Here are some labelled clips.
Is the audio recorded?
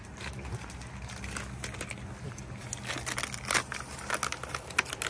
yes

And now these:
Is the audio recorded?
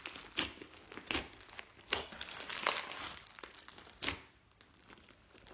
yes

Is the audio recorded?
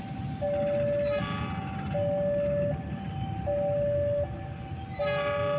yes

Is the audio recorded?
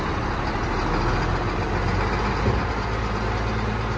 yes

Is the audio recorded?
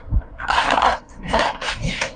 no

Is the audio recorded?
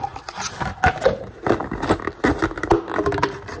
yes